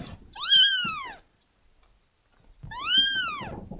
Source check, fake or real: real